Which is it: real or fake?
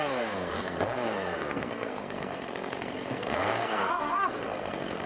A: fake